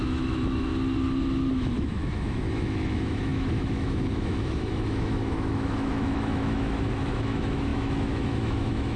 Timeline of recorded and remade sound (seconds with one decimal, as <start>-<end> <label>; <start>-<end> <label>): 0.0-0.7 remade; 0.7-1.5 recorded; 1.5-9.0 remade